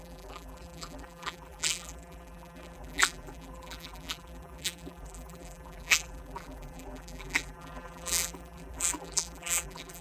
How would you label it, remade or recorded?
remade